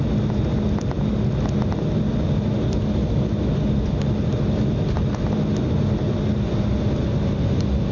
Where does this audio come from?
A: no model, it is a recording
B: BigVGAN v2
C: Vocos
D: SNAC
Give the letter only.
A